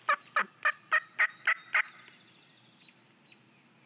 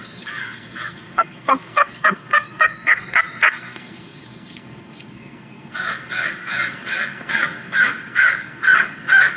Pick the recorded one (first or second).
first